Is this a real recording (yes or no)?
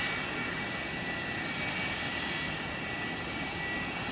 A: yes